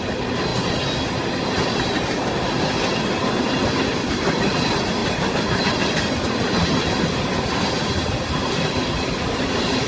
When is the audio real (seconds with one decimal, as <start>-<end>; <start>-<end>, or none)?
0.5-3.3; 5.0-6.2